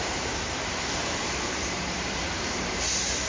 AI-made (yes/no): yes